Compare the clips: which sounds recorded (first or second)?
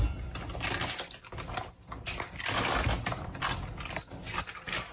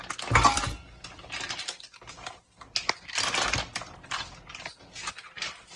second